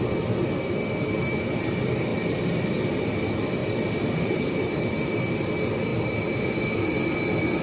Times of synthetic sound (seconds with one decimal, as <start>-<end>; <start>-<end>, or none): 3.6-5.2